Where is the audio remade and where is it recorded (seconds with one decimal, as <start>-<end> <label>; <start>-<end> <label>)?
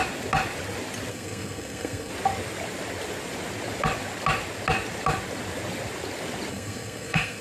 0.0-1.1 recorded; 1.1-2.1 remade; 2.1-6.5 recorded; 6.5-7.4 remade